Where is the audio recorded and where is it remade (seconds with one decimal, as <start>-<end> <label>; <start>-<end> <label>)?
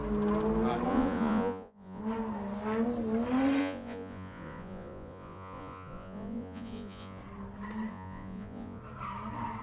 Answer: 0.0-0.9 recorded; 0.9-2.0 remade; 2.0-3.6 recorded; 3.6-7.2 remade; 7.2-7.9 recorded; 7.9-8.8 remade; 8.8-9.6 recorded